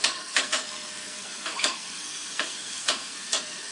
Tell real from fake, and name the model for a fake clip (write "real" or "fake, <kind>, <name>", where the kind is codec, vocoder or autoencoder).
fake, codec, SNAC